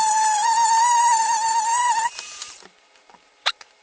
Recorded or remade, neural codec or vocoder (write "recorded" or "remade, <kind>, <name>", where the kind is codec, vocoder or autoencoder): remade, vocoder, BigVGAN v2